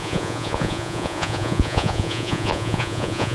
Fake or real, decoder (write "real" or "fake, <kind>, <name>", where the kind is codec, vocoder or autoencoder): fake, vocoder, Vocos